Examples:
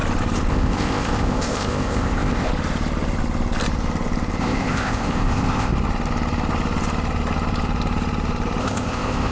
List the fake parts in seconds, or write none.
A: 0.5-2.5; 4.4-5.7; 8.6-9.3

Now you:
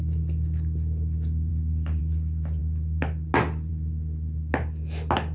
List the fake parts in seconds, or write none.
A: none

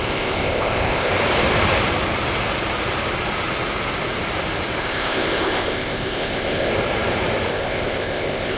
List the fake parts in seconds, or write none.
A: 0.0-1.1; 4.8-6.7; 7.5-8.6

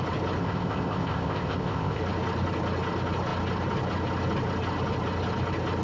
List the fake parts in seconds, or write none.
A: 0.4-2.0

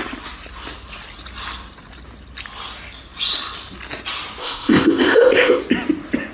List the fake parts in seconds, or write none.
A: 4.4-5.6

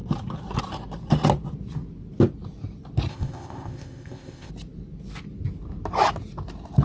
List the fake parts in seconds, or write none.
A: 3.1-4.5